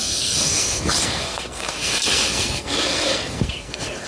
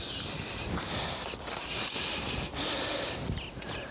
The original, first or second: second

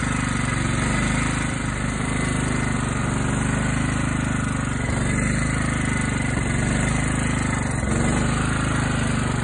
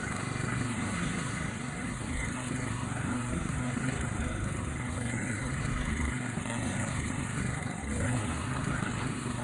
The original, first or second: first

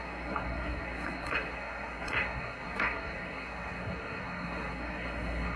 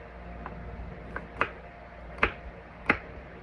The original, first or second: second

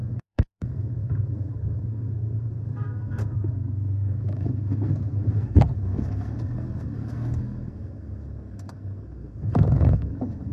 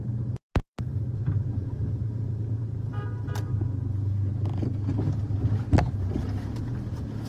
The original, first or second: second